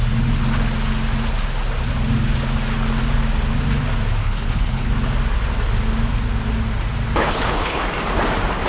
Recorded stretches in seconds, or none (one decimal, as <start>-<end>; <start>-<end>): 0.0-4.2; 4.9-7.2; 7.8-8.7